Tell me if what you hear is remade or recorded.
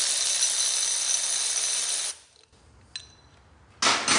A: recorded